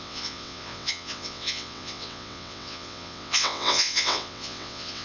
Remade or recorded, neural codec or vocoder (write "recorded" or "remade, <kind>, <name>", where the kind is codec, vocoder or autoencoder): remade, vocoder, WaveNeXt